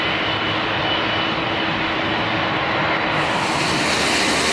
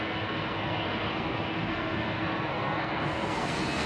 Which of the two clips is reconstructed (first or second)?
second